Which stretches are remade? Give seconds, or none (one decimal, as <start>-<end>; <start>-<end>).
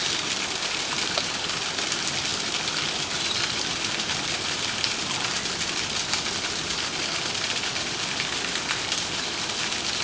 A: none